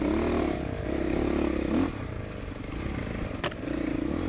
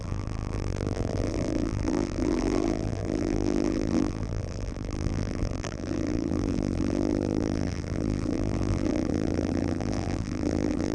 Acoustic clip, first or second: first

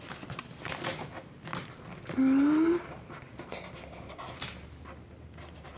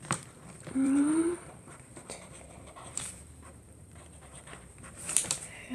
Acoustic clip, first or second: first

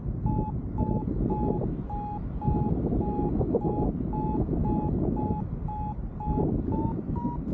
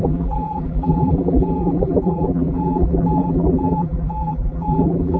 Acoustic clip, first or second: first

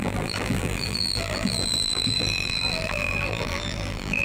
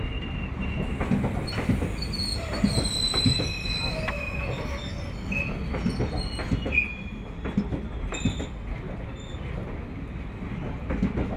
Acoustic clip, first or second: second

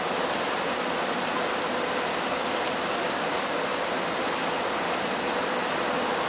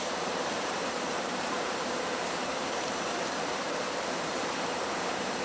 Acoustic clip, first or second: first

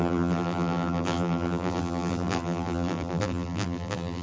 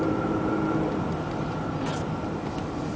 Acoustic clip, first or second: second